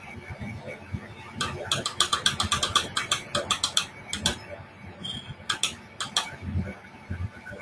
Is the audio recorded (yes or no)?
yes